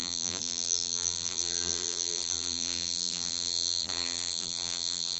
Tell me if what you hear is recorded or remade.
remade